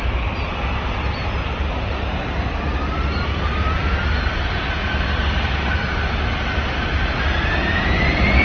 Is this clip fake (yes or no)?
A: no